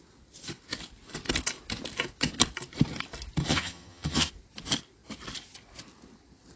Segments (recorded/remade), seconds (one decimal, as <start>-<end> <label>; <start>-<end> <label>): 0.0-3.4 recorded; 3.4-4.3 remade; 4.3-6.6 recorded